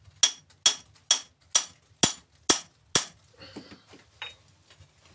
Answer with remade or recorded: recorded